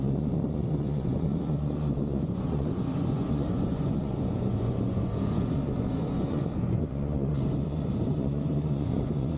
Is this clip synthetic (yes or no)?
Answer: yes